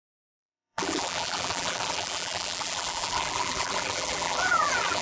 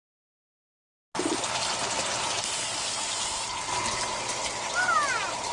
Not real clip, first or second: first